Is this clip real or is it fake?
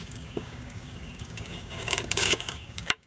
fake